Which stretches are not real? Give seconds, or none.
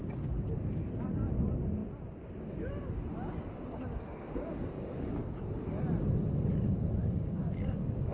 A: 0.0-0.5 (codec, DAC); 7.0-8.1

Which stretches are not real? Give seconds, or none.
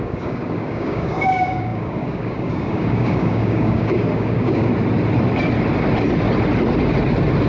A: 0.0-4.7 (codec, DAC)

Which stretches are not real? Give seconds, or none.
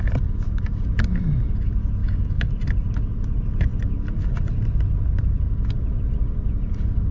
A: 2.0-2.5 (codec, DAC)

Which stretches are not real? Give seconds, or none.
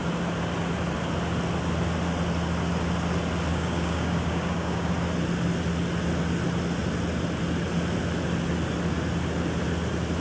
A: 3.5-4.9 (codec, DAC)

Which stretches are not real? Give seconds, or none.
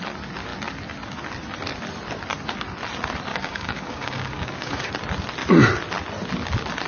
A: 3.3-4.9 (codec, DAC)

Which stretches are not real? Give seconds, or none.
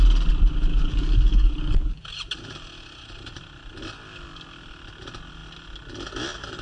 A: 0.7-2.0 (codec, DAC)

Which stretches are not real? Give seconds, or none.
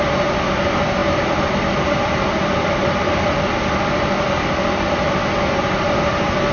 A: none